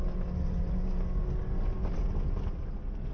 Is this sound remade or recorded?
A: recorded